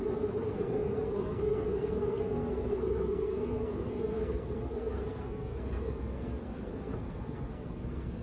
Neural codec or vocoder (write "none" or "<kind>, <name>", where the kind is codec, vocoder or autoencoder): codec, SNAC